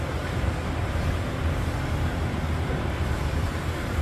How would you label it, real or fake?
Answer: fake